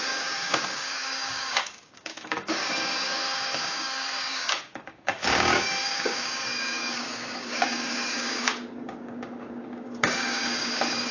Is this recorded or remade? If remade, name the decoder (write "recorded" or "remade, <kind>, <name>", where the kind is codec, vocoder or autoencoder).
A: remade, codec, DAC